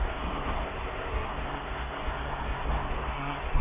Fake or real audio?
fake